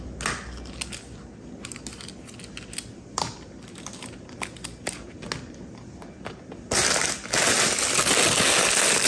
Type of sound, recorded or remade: recorded